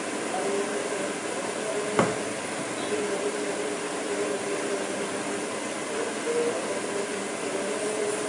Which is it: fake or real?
real